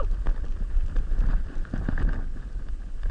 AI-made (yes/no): yes